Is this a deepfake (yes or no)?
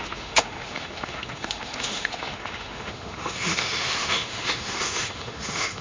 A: yes